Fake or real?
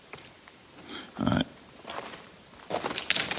fake